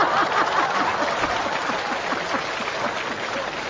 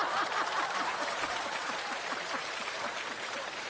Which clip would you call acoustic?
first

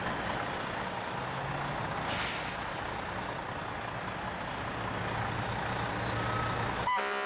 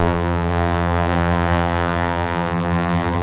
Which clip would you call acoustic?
first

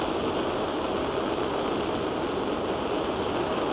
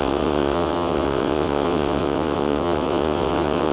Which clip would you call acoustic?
first